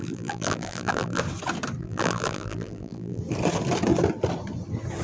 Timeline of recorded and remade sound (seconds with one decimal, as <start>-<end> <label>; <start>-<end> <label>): 0.0-1.2 remade; 1.2-1.8 recorded; 1.8-3.2 remade; 3.2-5.0 recorded